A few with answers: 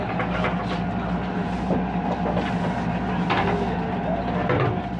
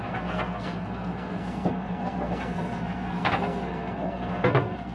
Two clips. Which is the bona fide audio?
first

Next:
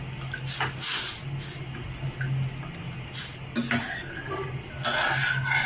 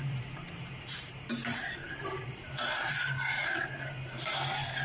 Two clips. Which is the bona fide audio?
first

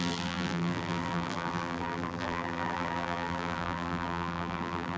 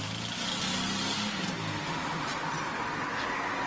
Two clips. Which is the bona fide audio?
second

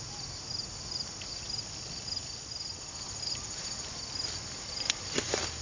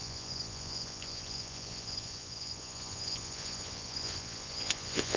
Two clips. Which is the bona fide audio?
first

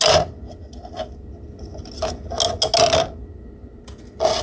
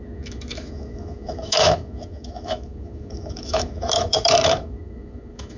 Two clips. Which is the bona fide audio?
first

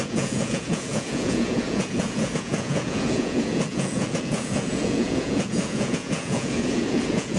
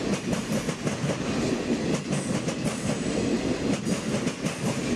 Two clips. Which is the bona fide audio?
second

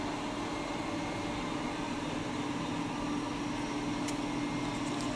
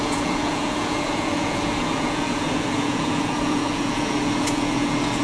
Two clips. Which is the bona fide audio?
first